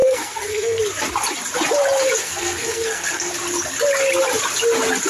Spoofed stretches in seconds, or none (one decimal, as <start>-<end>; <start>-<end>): 0.0-0.8; 2.2-3.3